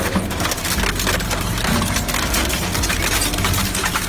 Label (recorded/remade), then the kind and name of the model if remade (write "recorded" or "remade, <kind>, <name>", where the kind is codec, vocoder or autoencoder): recorded